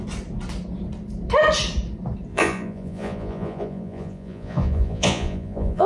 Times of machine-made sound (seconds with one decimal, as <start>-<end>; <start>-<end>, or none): 2.3-5.9